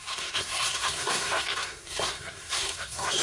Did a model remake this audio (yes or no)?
yes